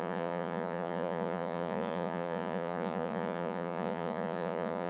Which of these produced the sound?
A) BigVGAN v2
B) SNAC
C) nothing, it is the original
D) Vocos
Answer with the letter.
D